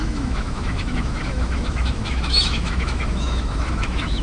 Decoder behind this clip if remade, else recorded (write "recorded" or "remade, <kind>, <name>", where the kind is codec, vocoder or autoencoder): remade, autoencoder, DAC-VAE